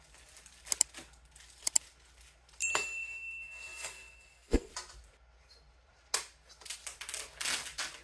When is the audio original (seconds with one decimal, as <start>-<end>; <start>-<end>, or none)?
0.0-2.6; 4.7-8.0